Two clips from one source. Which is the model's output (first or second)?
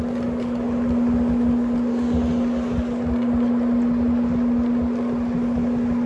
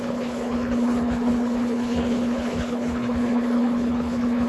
second